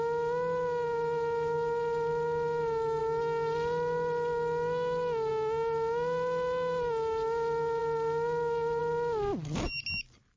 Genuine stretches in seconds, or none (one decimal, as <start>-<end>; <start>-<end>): 0.0-10.4